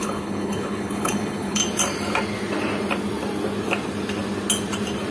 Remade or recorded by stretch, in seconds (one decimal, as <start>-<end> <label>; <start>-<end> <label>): 0.0-1.6 remade; 1.6-5.1 recorded